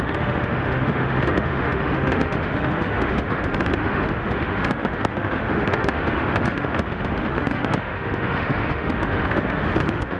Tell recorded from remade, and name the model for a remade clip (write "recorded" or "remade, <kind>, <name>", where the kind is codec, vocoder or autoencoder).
remade, autoencoder, DAC-VAE